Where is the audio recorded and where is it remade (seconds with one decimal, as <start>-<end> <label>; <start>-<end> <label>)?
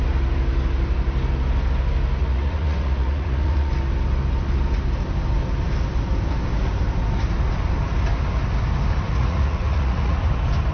0.0-2.2 recorded; 2.2-3.7 remade; 3.7-9.1 recorded; 9.1-10.2 remade; 10.2-10.7 recorded